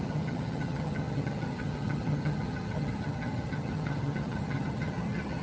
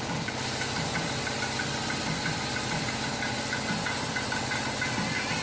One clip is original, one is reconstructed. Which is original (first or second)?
second